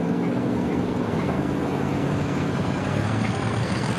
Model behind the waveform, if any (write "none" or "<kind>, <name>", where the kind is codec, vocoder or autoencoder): codec, SNAC